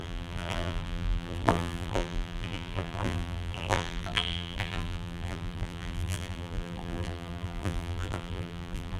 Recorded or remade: remade